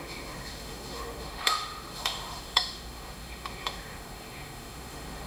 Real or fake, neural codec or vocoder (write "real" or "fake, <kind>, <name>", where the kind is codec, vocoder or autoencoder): fake, autoencoder, DAC-VAE